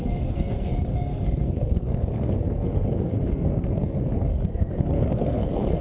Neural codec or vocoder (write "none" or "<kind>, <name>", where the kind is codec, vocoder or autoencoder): codec, SNAC